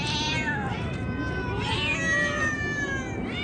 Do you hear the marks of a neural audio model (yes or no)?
no